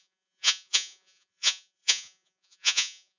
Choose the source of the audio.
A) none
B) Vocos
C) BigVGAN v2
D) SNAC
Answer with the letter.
B